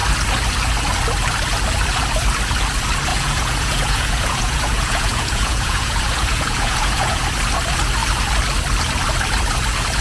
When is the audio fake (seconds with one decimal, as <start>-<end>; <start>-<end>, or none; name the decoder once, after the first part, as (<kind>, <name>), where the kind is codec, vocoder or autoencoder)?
3.1-7.2 (vocoder, Vocos)